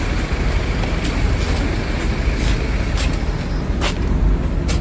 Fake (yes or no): no